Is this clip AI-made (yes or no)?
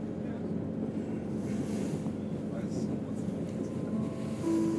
no